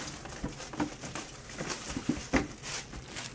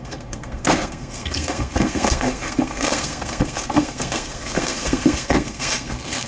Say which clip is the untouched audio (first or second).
first